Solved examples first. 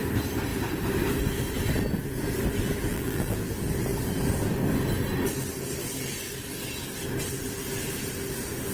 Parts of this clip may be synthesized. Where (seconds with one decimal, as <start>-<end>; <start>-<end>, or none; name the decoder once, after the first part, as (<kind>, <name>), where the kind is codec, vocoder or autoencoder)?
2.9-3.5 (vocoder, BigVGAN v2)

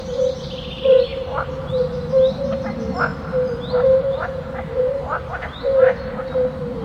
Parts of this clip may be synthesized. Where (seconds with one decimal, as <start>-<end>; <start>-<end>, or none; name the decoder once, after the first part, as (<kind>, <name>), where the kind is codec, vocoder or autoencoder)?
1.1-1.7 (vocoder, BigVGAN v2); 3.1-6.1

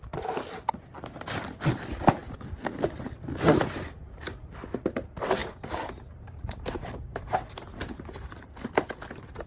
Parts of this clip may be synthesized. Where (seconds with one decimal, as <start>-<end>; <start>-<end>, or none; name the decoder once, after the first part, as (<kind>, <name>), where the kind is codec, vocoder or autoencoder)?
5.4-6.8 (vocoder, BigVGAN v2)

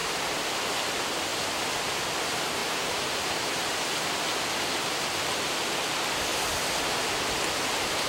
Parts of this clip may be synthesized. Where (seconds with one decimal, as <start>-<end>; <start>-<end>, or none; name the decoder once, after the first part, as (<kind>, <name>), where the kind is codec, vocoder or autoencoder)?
0.0-0.6 (vocoder, BigVGAN v2); 1.3-2.0; 2.6-3.8; 6.3-6.9

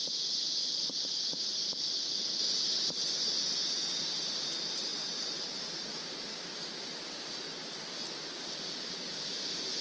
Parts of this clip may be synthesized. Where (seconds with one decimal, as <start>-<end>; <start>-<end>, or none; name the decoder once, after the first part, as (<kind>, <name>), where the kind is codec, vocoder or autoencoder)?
0.7-1.7 (vocoder, BigVGAN v2)

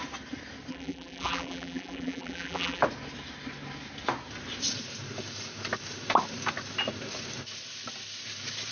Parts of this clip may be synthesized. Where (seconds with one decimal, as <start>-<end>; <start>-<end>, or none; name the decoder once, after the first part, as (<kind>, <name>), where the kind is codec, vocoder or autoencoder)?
0.7-2.8 (vocoder, BigVGAN v2)

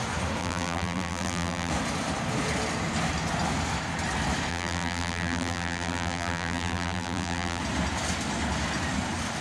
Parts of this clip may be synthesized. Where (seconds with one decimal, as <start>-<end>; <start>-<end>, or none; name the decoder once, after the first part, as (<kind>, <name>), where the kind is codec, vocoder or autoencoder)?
0.4-1.7 (vocoder, BigVGAN v2); 4.5-7.6

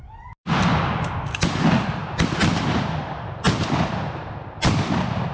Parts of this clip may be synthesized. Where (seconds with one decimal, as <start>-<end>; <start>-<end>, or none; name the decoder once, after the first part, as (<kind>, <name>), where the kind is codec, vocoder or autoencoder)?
2.0-5.3 (vocoder, BigVGAN v2)